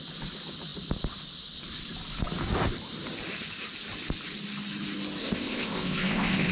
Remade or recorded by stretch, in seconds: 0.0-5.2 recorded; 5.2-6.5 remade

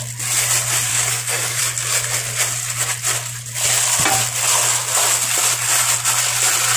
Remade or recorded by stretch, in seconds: 0.0-0.9 recorded; 0.9-1.6 remade; 1.6-6.8 recorded